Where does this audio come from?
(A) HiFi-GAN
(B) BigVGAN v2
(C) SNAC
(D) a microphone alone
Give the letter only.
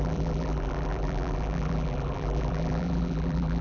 B